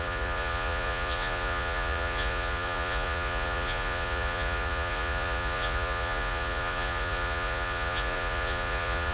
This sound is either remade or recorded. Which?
remade